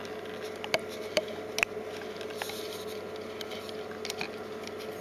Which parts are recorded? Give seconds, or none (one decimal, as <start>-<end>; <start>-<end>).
0.0-5.0